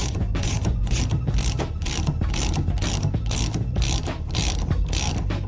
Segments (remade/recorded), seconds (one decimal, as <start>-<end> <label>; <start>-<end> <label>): 0.0-1.0 remade; 1.0-5.5 recorded